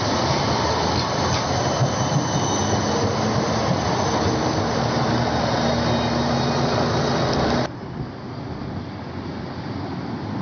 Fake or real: real